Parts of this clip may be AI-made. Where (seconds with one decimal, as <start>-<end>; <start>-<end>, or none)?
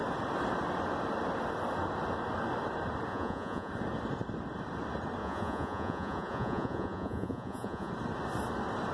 3.1-3.7; 5.2-7.9